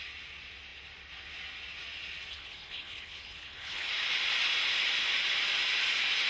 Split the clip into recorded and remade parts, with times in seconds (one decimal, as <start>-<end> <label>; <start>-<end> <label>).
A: 0.0-2.3 recorded; 2.3-3.9 remade; 3.9-6.3 recorded